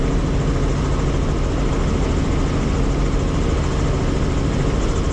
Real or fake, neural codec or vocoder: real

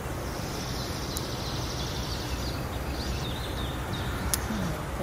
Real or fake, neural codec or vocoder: real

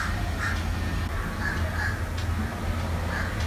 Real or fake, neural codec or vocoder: real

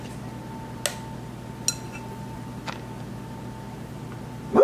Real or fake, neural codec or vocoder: real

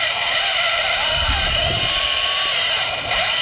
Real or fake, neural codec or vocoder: fake, vocoder, BigVGAN v2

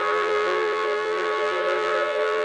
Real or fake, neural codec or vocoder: fake, vocoder, BigVGAN v2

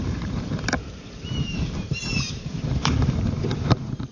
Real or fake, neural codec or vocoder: fake, vocoder, BigVGAN v2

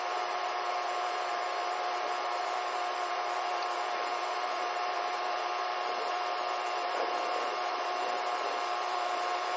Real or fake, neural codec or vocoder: fake, vocoder, BigVGAN v2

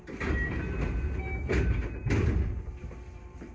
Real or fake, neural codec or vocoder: real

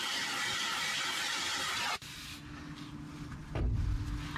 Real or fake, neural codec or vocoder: real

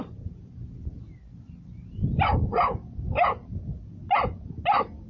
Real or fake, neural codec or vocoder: real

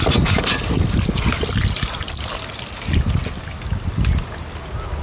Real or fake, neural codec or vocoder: real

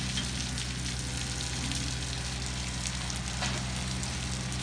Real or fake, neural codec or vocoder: real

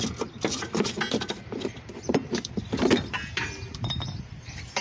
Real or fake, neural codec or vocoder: fake, vocoder, BigVGAN v2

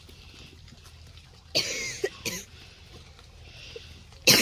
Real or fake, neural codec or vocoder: real